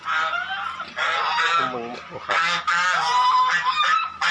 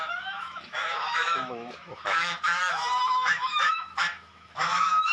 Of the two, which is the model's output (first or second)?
second